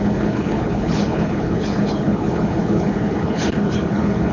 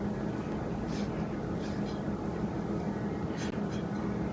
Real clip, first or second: second